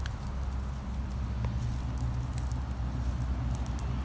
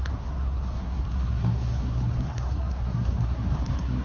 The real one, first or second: first